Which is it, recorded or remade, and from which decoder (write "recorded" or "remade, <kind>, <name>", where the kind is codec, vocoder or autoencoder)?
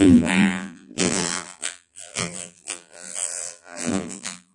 remade, vocoder, BigVGAN v2